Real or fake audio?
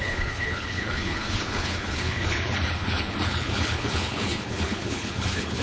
fake